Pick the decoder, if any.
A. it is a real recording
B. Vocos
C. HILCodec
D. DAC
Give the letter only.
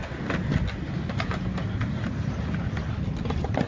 A